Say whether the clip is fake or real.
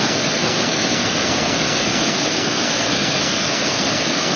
fake